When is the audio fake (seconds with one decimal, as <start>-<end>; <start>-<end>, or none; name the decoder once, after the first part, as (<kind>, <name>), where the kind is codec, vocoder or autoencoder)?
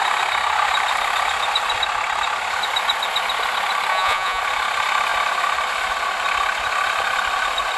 3.9-4.4 (vocoder, Vocos)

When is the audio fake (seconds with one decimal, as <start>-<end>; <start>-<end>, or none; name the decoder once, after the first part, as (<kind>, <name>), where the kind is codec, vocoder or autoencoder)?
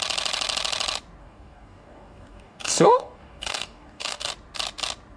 1.2-4.3 (codec, DAC)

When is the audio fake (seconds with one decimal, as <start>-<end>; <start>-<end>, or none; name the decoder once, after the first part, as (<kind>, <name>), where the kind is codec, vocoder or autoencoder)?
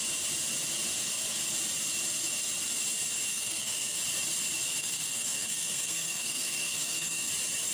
3.3-4.0 (codec, SNAC); 4.8-7.3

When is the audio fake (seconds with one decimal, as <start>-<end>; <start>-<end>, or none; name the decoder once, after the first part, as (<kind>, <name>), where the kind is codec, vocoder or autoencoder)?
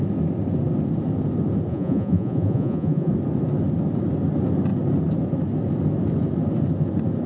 1.7-3.1 (vocoder, Vocos)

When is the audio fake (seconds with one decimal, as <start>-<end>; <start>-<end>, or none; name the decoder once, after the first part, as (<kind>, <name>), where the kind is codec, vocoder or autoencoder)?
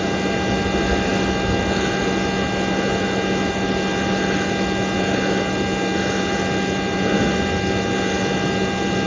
none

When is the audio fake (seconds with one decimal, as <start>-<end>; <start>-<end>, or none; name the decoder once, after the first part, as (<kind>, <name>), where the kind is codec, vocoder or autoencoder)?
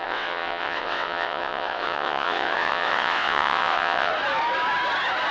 0.0-4.1 (vocoder, WaveNeXt)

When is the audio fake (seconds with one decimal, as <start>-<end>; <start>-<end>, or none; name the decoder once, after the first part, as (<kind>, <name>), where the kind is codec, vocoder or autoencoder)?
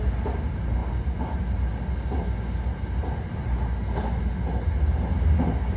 none